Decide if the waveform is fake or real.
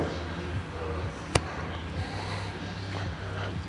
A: real